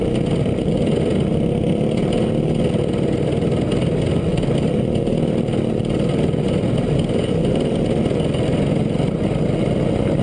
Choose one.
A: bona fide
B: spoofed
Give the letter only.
A